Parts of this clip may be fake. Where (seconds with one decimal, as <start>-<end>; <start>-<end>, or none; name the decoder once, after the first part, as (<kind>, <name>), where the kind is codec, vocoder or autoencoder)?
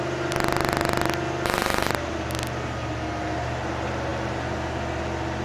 none